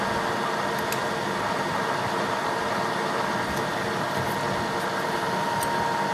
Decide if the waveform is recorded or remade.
recorded